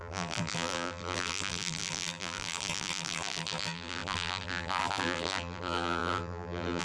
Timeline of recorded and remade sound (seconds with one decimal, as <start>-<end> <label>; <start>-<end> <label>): 0.0-6.8 remade